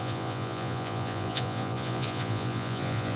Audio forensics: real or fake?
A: fake